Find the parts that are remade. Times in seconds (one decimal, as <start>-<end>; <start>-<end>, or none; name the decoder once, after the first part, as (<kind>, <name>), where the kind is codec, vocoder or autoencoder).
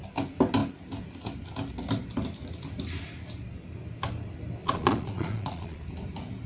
4.6-5.8 (vocoder, Vocos)